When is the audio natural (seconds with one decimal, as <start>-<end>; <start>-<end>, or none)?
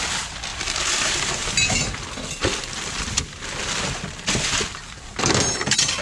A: 0.0-0.5; 3.6-6.0